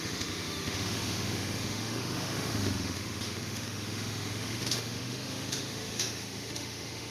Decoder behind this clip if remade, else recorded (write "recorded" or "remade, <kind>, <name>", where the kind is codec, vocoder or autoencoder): remade, autoencoder, DAC-VAE